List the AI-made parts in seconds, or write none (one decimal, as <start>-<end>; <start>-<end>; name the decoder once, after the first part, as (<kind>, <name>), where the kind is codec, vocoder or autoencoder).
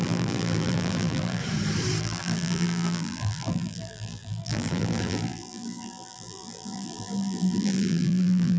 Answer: 0.0-1.4 (vocoder, BigVGAN v2); 2.0-8.6